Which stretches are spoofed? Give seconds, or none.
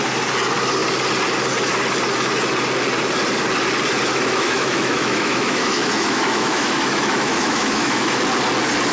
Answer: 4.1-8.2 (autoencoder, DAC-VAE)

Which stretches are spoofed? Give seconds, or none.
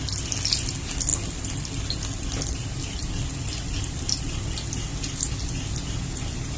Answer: none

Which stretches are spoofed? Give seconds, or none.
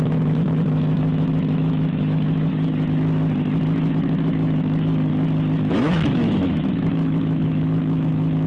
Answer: 0.0-2.5 (autoencoder, DAC-VAE); 3.9-5.1; 5.7-8.5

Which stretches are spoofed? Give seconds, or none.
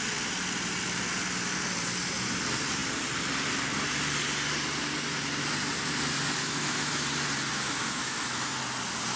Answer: 6.4-7.1 (autoencoder, DAC-VAE); 7.5-8.6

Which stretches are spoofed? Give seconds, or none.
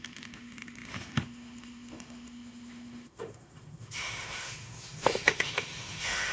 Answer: 0.0-6.3 (autoencoder, DAC-VAE)